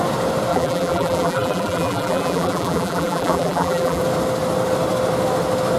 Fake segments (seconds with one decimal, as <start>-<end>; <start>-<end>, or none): 0.5-4.0